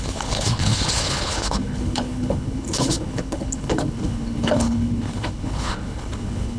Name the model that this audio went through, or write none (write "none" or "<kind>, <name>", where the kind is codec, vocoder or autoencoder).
codec, HILCodec